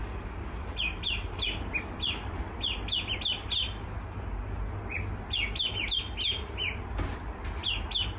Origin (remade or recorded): recorded